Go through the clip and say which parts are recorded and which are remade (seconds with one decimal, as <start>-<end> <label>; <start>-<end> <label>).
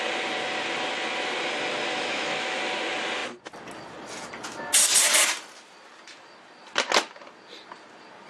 0.0-1.9 recorded; 1.9-2.6 remade; 2.6-8.3 recorded